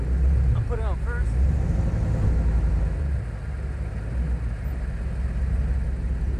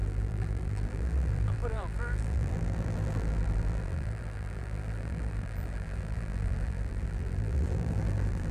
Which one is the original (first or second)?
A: first